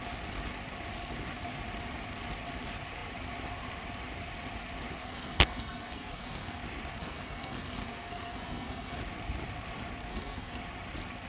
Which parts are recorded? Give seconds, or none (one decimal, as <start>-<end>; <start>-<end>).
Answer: 0.0-5.0; 6.6-7.0; 9.0-10.1; 10.6-11.3

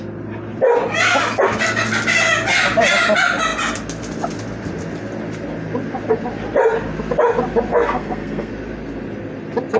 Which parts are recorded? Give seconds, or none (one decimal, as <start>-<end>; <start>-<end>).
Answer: 0.0-7.7; 8.5-9.8

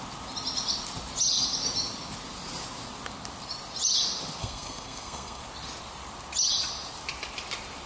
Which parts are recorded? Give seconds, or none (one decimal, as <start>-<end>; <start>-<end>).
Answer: 0.0-4.4; 5.4-7.9

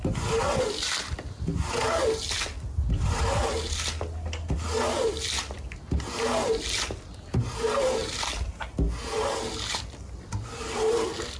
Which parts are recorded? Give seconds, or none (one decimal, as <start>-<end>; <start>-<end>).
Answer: 0.0-11.4

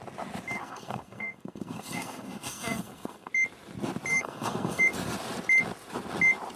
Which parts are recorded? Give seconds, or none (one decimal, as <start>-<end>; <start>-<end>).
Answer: 0.0-0.6; 3.3-4.1; 4.8-6.6

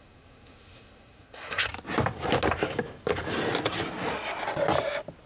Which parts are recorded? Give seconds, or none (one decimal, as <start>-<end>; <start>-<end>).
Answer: 1.7-5.3

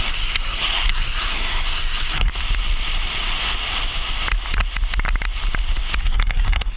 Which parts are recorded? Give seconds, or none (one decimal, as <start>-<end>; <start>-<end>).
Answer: 2.3-6.0